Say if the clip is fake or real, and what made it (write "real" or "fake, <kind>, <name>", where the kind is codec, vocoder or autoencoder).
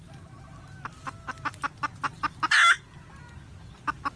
real